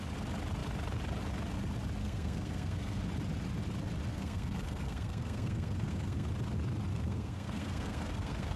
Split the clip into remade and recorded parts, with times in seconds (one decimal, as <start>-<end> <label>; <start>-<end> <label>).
0.0-2.0 recorded; 2.0-3.0 remade; 3.0-4.1 recorded; 4.1-6.3 remade; 6.3-6.9 recorded; 6.9-8.6 remade